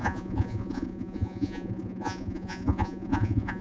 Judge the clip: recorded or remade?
remade